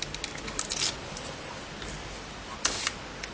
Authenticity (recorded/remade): recorded